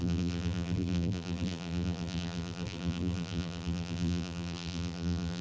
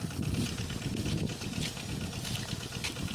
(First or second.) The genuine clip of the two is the second